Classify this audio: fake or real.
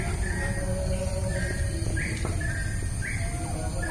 real